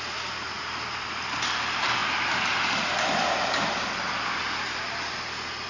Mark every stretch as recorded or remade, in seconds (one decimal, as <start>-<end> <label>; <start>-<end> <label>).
0.0-5.7 recorded